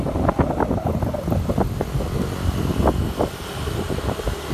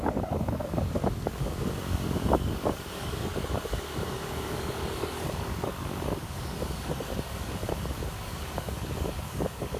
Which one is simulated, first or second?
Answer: second